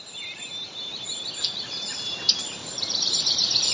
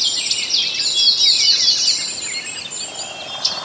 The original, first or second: second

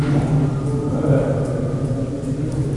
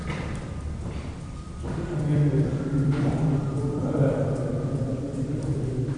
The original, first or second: first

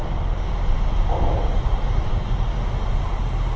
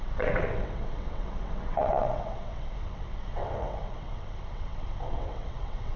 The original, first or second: first